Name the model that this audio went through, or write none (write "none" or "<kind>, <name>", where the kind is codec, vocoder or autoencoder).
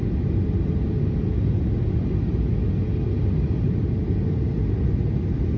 none